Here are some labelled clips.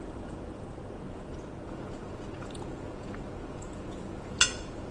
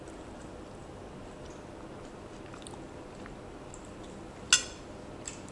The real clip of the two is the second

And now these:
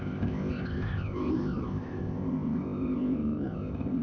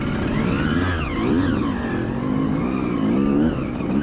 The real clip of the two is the second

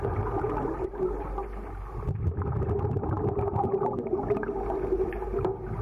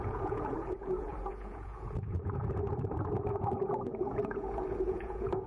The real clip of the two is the first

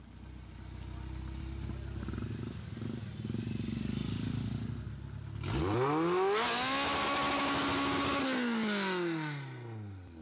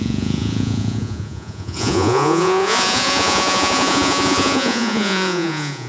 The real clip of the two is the first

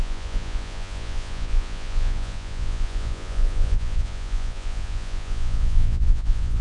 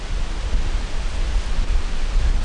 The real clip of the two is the second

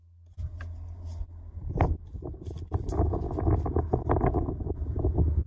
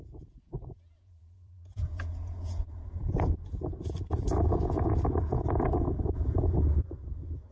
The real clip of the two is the first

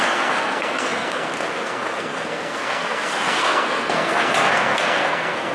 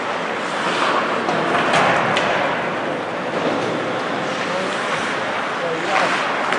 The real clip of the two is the second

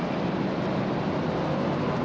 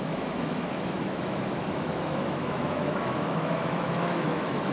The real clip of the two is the first